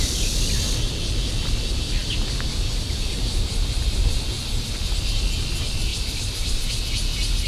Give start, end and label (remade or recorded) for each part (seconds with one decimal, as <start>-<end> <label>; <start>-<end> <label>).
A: 0.0-5.9 recorded; 5.9-6.7 remade; 6.7-7.5 recorded